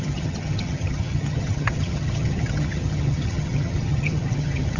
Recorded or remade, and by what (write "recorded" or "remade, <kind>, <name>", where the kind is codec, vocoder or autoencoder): remade, vocoder, HiFi-GAN